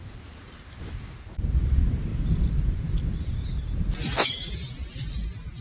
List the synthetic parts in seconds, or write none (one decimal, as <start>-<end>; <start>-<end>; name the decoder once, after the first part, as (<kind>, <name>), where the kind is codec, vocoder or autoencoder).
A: none